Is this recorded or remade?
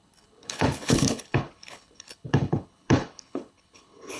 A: remade